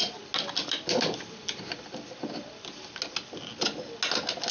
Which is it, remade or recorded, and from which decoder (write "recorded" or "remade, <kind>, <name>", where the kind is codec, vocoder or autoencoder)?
recorded